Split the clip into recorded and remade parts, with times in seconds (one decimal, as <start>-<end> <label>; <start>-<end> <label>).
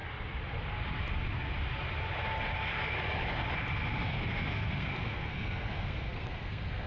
0.0-4.1 recorded; 4.1-6.9 remade